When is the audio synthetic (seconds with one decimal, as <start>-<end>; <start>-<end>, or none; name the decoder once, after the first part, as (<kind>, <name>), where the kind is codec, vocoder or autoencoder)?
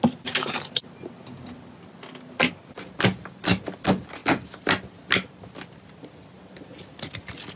none